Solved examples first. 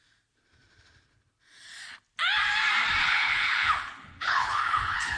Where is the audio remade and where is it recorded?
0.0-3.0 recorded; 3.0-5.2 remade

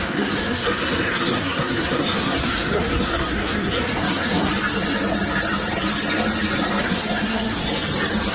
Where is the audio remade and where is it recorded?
0.0-4.5 remade; 4.5-6.8 recorded; 6.8-7.6 remade; 7.6-8.3 recorded

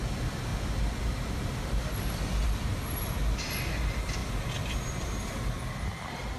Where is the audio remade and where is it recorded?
0.0-6.4 recorded

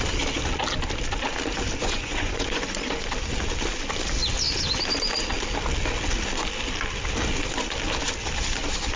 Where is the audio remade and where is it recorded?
0.0-1.8 recorded; 1.8-2.6 remade; 2.6-9.0 recorded